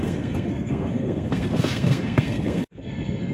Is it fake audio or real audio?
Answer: fake